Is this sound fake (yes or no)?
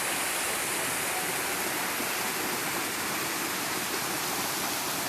no